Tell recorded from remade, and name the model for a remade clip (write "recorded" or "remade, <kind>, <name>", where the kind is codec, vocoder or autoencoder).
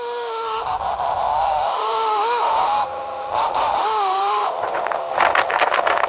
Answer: remade, autoencoder, DAC-VAE